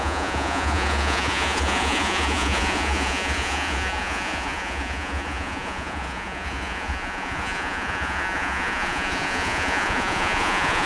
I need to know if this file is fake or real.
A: fake